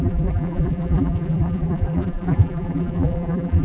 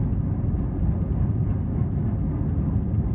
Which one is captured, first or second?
second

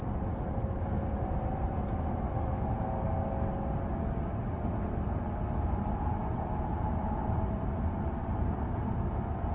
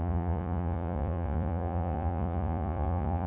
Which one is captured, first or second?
first